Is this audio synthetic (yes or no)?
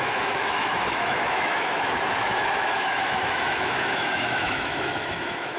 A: yes